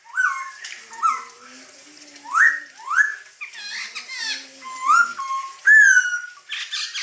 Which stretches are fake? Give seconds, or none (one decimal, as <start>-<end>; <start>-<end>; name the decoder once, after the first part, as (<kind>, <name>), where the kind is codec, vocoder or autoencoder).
none